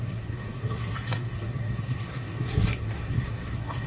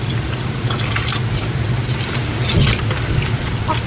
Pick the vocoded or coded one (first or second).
first